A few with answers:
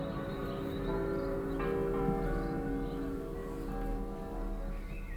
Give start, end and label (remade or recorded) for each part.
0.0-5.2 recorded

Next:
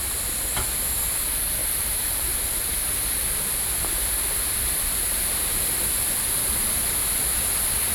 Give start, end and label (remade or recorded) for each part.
0.0-1.6 recorded; 1.6-4.0 remade; 4.0-7.9 recorded

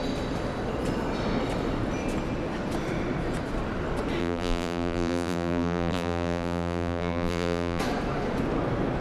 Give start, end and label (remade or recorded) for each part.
0.0-4.2 recorded; 4.2-7.8 remade; 7.8-9.0 recorded

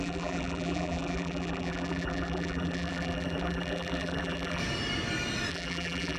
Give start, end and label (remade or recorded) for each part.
0.0-4.6 remade; 4.6-5.5 recorded; 5.5-6.2 remade

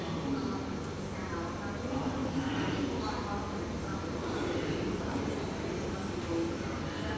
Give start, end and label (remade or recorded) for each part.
0.0-2.2 recorded; 2.2-3.1 remade; 3.1-3.9 recorded; 3.9-5.2 remade; 5.2-7.2 recorded

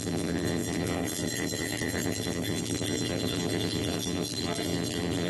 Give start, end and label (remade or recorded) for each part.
0.0-5.3 remade